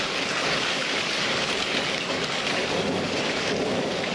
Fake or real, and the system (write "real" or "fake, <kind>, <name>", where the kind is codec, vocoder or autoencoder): fake, codec, DAC